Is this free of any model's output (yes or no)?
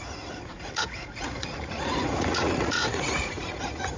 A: no